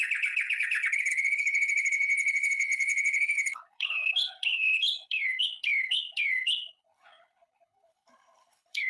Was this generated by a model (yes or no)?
yes